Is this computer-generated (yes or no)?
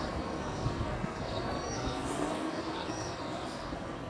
yes